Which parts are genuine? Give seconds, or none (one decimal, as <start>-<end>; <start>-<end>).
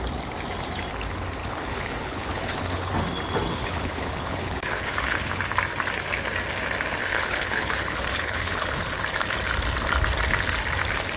0.0-1.4; 2.9-3.5; 5.4-7.0; 9.0-11.2